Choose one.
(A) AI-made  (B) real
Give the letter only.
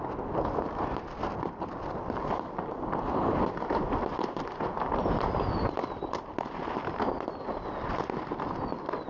B